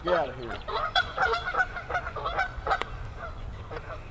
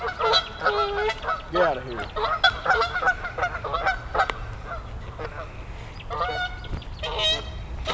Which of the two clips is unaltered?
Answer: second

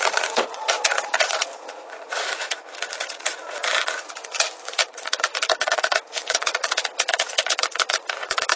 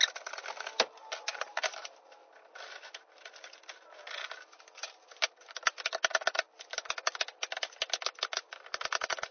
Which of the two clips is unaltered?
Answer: second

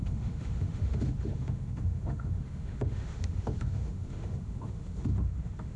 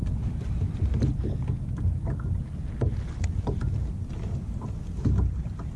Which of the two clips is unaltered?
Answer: second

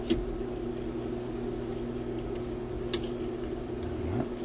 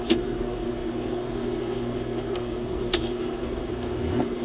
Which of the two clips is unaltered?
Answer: first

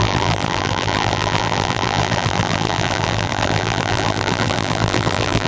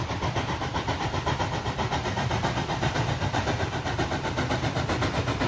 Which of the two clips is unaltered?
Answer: second